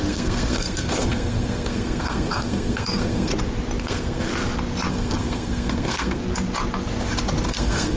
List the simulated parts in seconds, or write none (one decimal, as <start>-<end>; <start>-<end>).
0.0-3.3; 3.8-4.3; 4.9-6.2; 7.5-8.0